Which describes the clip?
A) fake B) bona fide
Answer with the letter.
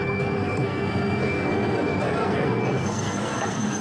A